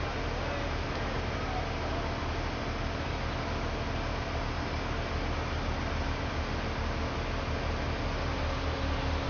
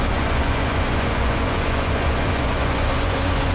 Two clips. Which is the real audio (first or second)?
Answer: first